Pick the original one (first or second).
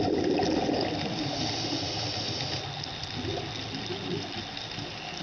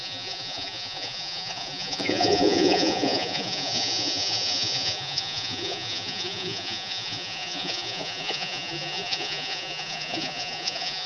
first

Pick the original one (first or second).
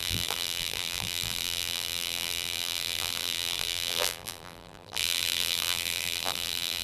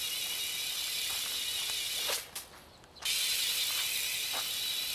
second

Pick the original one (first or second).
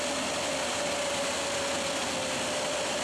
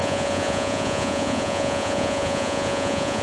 first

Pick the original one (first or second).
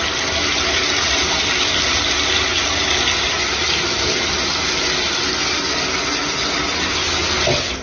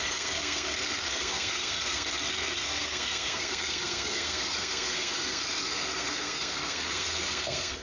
first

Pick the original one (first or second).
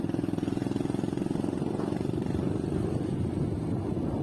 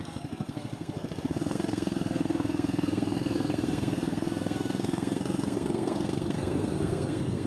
first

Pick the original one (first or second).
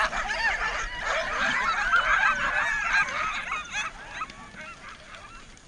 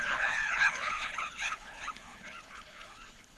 first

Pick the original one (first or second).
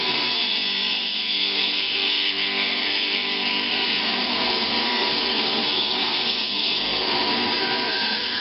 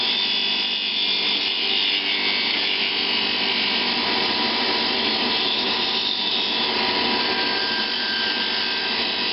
second